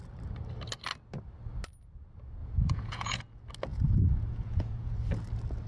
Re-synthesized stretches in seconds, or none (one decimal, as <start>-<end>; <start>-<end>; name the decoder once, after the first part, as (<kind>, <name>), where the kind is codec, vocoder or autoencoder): 2.4-3.2 (vocoder, Vocos); 3.7-4.9